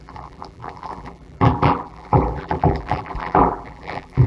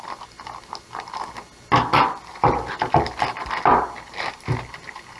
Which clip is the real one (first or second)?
second